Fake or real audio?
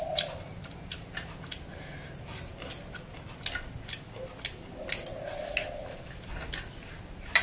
real